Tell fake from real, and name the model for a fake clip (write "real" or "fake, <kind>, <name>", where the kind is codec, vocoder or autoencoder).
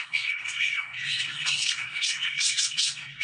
fake, codec, SNAC